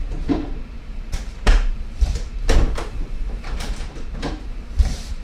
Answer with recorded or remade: remade